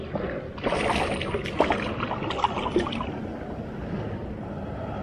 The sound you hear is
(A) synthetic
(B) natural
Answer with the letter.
B